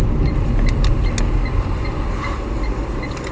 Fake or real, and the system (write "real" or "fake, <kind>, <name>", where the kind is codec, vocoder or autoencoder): real